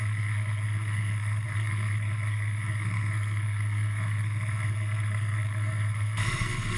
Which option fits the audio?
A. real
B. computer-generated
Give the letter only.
B